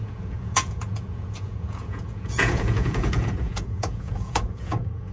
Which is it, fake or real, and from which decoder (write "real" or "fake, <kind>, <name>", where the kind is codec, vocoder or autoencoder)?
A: fake, vocoder, Vocos